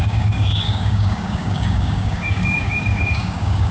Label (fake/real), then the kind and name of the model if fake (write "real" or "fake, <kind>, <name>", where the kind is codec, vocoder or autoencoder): fake, codec, DAC